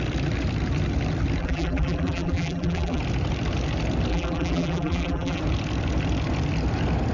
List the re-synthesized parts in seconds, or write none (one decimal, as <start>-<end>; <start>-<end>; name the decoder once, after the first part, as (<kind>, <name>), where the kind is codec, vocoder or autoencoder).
1.4-3.0 (vocoder, BigVGAN v2); 4.1-5.4